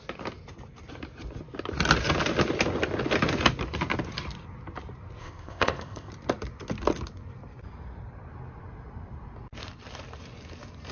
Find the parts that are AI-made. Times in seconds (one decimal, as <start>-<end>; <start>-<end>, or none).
5.2-6.1